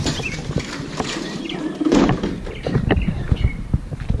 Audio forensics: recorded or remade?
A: remade